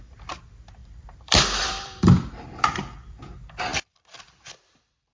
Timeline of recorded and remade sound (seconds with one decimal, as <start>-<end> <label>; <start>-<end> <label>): 0.0-0.8 recorded; 0.8-3.2 remade; 3.2-3.7 recorded; 3.7-4.2 remade; 4.2-5.1 recorded